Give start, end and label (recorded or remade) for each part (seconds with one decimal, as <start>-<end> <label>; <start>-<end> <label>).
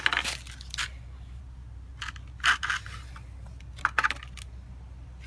0.0-0.8 recorded; 0.8-1.4 remade; 1.4-5.3 recorded